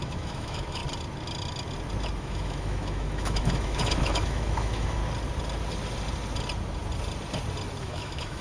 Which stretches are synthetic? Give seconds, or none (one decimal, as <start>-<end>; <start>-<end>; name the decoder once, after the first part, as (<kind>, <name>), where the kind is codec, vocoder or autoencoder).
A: 0.0-0.8 (autoencoder, DAC-VAE); 2.2-5.0; 7.8-8.4